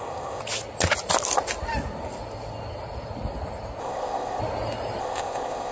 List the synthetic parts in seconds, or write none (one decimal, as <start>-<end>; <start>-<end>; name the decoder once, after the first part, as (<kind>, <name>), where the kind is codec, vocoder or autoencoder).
0.0-0.4 (codec, ZipCodec); 3.8-4.4; 5.0-5.7